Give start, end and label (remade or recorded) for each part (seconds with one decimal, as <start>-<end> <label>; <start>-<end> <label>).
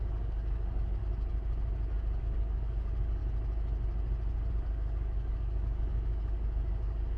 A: 0.0-1.0 remade; 1.0-2.2 recorded; 2.2-3.2 remade; 3.2-4.5 recorded; 4.5-7.2 remade